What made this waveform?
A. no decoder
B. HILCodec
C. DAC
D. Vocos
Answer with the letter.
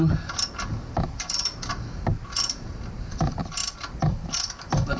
A